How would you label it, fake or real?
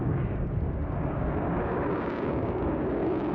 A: fake